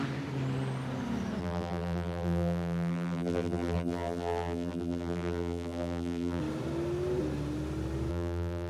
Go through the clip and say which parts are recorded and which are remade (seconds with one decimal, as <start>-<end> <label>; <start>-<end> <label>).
0.0-1.4 recorded; 1.4-6.4 remade; 6.4-8.1 recorded; 8.1-8.7 remade